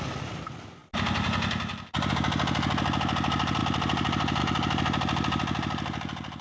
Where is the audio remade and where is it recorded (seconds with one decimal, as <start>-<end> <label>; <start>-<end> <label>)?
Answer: 0.0-6.4 recorded